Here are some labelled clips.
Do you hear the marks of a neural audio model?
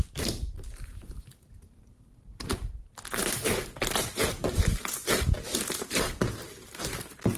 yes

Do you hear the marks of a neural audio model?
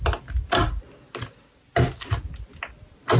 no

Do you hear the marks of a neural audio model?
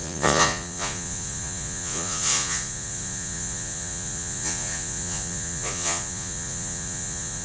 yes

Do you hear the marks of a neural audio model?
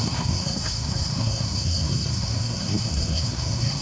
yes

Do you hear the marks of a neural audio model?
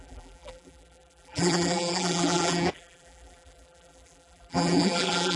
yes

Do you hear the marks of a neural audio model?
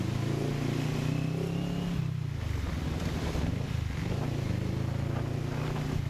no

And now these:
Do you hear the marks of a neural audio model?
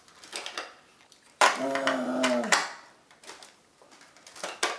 no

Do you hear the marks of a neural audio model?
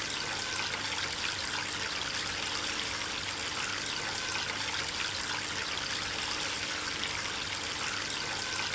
no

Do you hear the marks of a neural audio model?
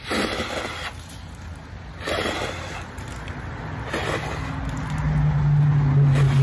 no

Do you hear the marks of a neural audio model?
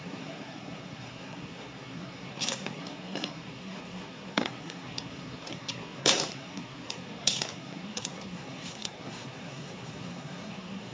yes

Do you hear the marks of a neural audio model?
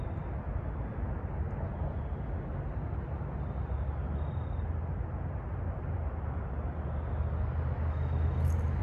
no